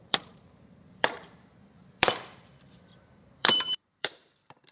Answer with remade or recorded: remade